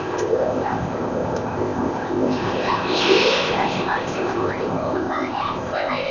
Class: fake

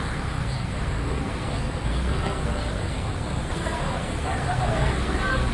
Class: fake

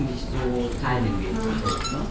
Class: real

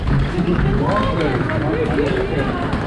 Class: real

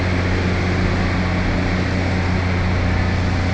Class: real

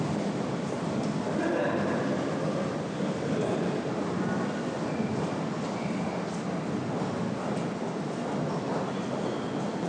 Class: real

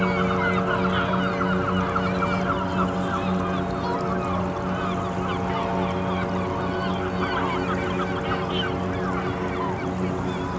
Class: real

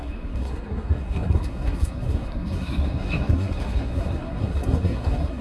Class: fake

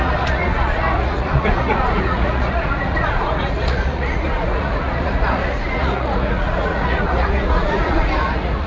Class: fake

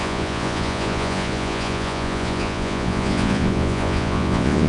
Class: fake